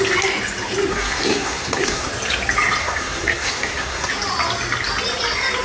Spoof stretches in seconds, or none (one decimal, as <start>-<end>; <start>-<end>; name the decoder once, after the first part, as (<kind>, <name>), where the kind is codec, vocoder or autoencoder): 0.9-2.1 (codec, SNAC); 2.8-4.1